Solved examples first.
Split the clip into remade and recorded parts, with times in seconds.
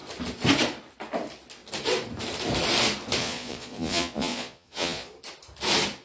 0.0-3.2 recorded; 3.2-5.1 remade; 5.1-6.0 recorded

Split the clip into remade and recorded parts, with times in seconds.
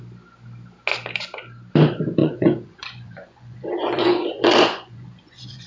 0.0-2.2 recorded; 2.2-5.7 remade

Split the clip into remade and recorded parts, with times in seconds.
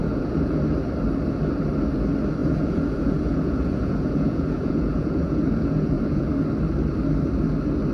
0.0-0.6 remade; 0.6-2.4 recorded; 2.4-6.3 remade; 6.3-7.9 recorded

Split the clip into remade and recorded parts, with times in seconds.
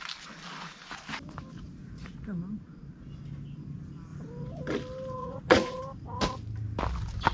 0.0-1.8 recorded; 1.8-2.4 remade; 2.4-5.2 recorded; 5.2-5.8 remade; 5.8-7.3 recorded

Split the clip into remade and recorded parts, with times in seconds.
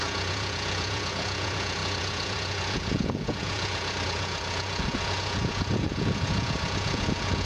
0.0-7.4 remade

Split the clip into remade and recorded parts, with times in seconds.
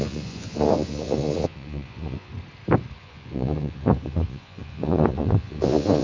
0.0-2.3 remade; 2.3-3.0 recorded; 3.0-6.0 remade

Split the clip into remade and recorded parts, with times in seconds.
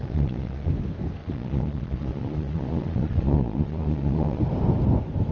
0.0-0.7 remade; 0.7-1.2 recorded; 1.2-4.4 remade; 4.4-5.3 recorded